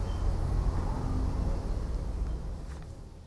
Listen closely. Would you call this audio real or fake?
real